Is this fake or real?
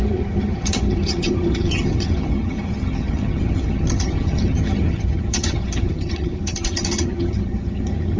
fake